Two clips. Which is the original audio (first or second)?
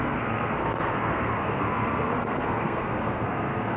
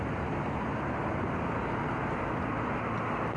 second